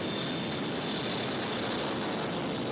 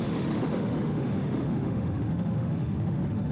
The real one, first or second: first